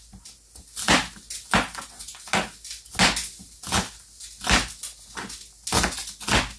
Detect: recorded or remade recorded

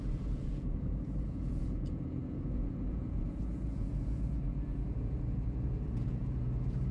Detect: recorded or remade remade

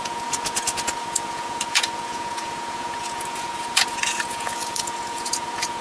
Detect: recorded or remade remade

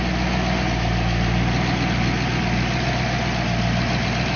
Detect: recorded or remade recorded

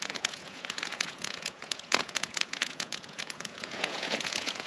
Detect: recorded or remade remade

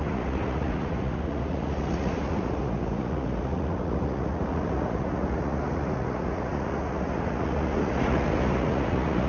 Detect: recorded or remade remade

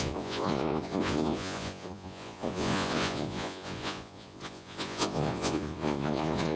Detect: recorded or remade remade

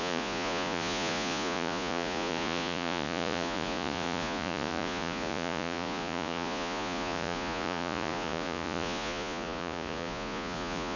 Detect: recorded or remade remade